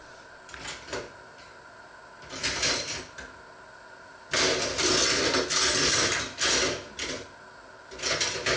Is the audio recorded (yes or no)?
yes